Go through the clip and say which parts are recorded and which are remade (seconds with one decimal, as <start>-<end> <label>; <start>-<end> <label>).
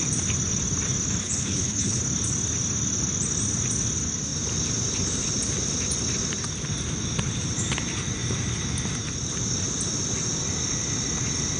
0.0-1.2 recorded; 1.2-2.0 remade; 2.0-11.6 recorded